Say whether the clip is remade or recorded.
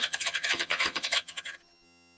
remade